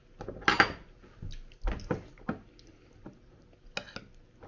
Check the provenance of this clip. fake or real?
real